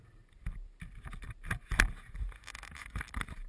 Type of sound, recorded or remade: recorded